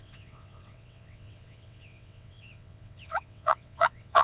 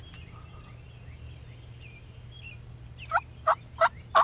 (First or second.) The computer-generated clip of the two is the first